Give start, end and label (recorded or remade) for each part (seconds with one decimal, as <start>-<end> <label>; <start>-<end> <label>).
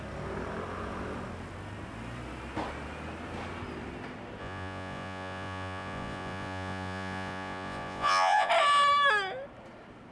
0.0-4.4 recorded; 4.4-8.5 remade; 8.5-10.1 recorded